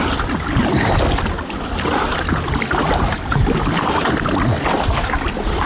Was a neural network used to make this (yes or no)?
no